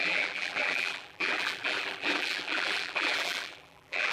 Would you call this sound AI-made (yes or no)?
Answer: yes